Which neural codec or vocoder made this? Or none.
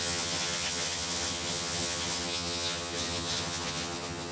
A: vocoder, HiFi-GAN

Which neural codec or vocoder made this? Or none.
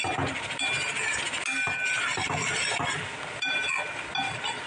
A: none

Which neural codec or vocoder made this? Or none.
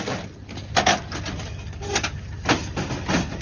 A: none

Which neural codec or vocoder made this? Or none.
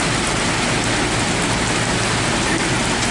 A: none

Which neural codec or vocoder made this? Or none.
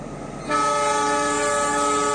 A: none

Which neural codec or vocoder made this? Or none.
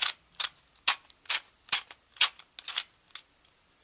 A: none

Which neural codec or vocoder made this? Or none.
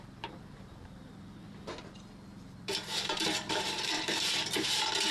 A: vocoder, BigVGAN v2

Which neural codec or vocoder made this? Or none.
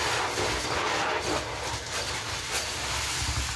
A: none